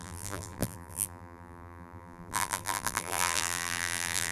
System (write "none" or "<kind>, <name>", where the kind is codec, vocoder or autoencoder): vocoder, BigVGAN v2